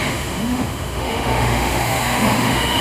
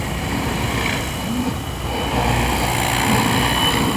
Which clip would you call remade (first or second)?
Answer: first